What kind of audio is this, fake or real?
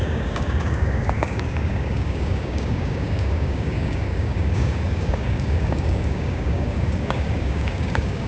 fake